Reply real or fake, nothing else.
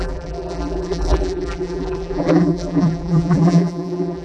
fake